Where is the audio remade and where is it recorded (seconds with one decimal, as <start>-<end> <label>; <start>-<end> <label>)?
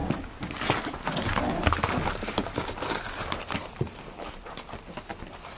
0.0-1.5 remade; 1.5-2.4 recorded; 2.4-4.7 remade; 4.7-5.6 recorded